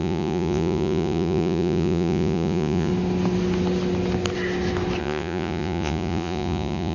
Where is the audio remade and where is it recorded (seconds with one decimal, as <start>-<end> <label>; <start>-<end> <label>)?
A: 0.0-2.9 remade; 2.9-5.0 recorded; 5.0-6.9 remade